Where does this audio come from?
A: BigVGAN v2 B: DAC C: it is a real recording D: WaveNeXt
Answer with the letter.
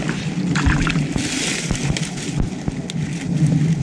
C